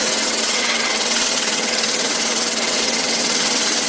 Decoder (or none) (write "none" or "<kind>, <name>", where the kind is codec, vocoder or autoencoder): vocoder, WaveNeXt